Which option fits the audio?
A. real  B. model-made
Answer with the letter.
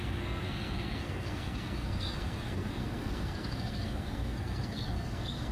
B